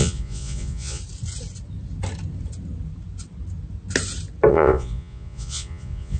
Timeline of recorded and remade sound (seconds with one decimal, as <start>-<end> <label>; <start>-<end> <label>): 0.0-1.0 remade; 1.0-4.5 recorded; 4.5-6.2 remade